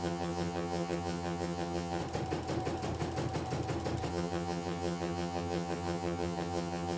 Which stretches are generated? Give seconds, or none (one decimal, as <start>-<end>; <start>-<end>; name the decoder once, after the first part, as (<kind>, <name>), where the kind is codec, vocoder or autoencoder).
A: 0.0-2.0 (vocoder, HiFi-GAN); 4.1-7.0